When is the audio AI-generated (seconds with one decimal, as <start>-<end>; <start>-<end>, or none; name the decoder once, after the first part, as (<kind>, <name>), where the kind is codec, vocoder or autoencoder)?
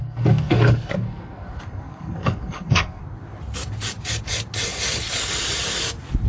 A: 0.0-3.0 (codec, SNAC)